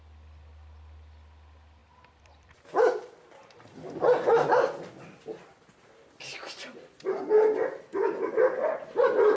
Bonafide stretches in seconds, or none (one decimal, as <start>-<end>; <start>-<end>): 0.0-1.8; 4.9-9.4